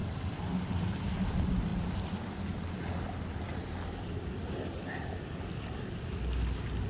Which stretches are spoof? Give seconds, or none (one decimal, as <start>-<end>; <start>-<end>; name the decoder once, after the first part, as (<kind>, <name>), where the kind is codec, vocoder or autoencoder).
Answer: none

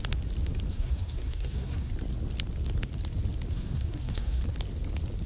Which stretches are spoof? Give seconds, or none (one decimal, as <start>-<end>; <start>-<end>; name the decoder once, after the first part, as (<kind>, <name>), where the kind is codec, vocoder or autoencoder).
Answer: 0.7-1.9 (codec, SNAC); 3.5-4.4

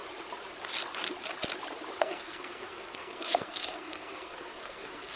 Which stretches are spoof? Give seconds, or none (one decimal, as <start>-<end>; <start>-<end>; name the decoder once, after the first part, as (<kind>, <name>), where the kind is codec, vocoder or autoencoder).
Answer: 2.0-5.2 (codec, SNAC)

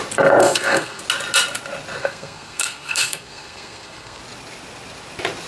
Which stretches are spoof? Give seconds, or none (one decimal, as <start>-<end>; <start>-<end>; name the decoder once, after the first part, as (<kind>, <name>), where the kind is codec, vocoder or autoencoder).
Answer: 0.4-1.0 (codec, SNAC); 2.0-4.2

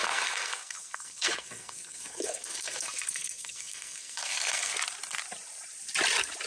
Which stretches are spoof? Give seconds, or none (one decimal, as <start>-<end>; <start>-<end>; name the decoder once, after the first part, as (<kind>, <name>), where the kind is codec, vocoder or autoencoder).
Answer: 0.0-4.7 (codec, SNAC)

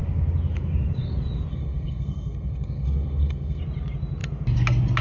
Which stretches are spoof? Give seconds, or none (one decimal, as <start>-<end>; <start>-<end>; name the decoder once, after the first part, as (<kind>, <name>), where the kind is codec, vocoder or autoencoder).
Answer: 1.5-3.6 (codec, SNAC)

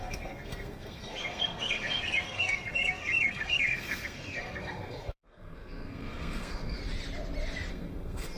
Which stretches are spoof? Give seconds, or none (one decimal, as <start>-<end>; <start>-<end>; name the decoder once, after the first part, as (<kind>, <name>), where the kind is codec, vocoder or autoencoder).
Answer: 0.0-6.8 (codec, SNAC); 7.7-8.4

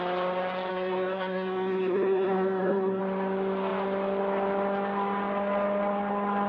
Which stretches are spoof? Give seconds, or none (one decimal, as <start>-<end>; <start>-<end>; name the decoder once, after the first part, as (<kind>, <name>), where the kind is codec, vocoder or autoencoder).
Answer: 0.7-3.0 (codec, SNAC)